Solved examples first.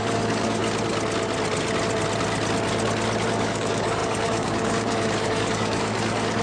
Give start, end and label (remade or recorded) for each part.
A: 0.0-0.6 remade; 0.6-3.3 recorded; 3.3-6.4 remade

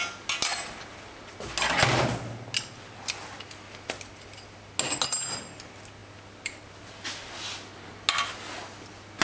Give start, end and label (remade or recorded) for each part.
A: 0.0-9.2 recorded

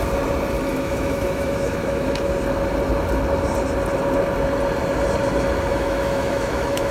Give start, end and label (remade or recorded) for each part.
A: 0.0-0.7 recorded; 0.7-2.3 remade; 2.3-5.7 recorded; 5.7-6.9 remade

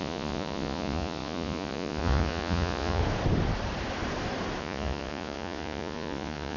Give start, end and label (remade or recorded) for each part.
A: 0.0-3.0 remade; 3.0-4.6 recorded; 4.6-6.6 remade